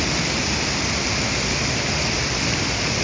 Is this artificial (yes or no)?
no